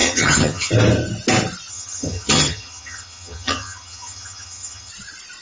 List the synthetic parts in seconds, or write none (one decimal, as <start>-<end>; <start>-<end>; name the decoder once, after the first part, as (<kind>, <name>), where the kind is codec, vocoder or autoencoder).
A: 0.0-0.7 (vocoder, HiFi-GAN); 1.7-4.9